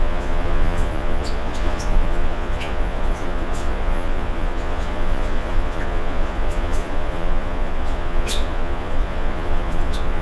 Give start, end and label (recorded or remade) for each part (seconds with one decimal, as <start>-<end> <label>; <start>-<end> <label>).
0.0-10.2 remade